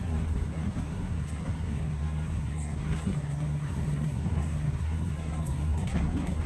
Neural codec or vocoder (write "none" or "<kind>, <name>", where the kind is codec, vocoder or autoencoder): codec, SNAC